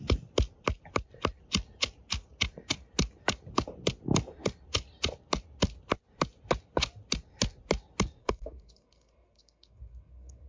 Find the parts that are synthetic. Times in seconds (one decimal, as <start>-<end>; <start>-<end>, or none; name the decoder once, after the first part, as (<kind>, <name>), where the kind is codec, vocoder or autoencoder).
8.2-10.5 (codec, SNAC)